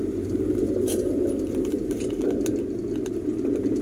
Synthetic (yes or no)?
no